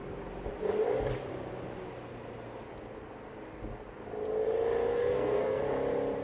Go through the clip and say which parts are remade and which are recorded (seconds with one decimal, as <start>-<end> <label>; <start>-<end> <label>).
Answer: 0.0-4.9 recorded; 4.9-5.6 remade; 5.6-6.2 recorded